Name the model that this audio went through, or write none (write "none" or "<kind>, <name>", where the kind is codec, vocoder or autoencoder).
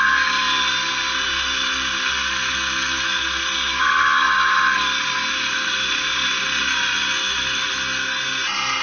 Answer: none